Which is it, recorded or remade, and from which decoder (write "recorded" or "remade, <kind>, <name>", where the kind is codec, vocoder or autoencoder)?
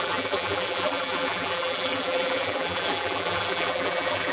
remade, vocoder, BigVGAN v2